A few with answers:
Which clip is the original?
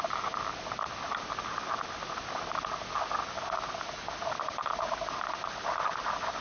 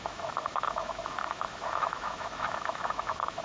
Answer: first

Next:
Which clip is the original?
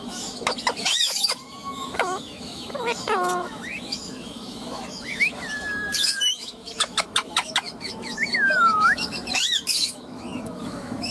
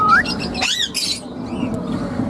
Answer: second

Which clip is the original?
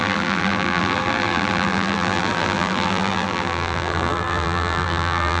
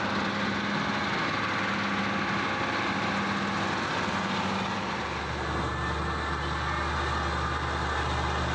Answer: second